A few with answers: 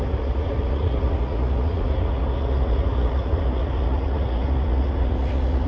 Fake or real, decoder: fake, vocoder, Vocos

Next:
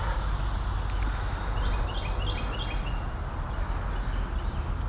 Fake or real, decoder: real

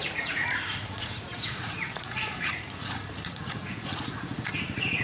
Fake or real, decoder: fake, vocoder, Vocos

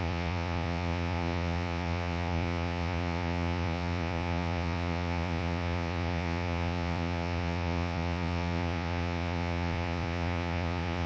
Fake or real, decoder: fake, vocoder, Vocos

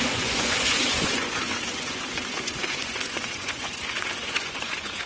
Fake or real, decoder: fake, vocoder, Vocos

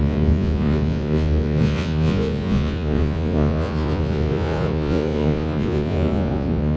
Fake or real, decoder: fake, vocoder, Vocos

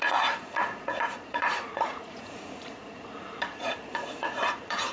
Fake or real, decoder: fake, vocoder, Vocos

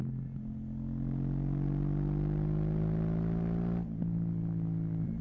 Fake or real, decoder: real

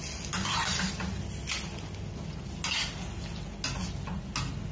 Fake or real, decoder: real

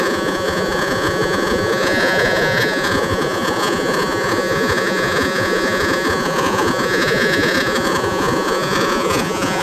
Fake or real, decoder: fake, vocoder, Vocos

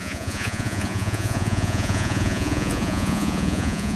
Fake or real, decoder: fake, vocoder, Vocos